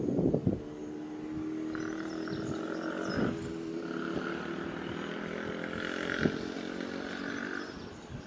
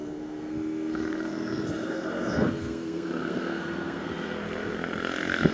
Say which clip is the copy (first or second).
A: second